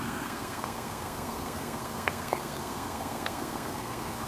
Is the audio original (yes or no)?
no